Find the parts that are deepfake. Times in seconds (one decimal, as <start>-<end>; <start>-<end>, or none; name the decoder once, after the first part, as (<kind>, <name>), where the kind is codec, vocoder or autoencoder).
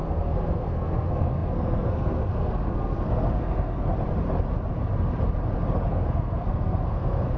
0.0-3.9 (codec, SNAC); 5.9-7.4